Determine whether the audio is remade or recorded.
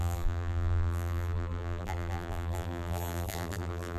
remade